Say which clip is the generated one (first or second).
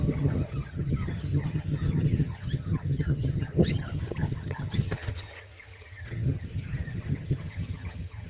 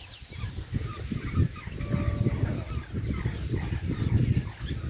first